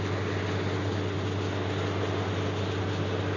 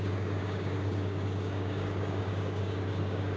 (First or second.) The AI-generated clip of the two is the second